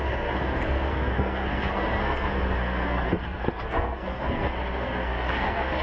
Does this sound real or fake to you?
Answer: fake